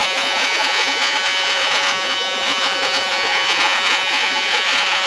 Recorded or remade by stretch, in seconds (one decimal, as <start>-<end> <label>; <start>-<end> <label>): 0.0-5.1 remade